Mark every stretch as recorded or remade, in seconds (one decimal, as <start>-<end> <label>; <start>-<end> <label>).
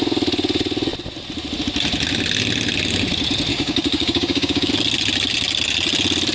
0.0-3.5 recorded; 3.5-4.7 remade; 4.7-6.3 recorded